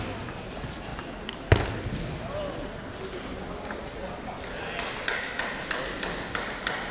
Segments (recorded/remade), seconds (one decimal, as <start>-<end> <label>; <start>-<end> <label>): 0.0-6.9 recorded